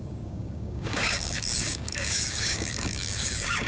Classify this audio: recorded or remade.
remade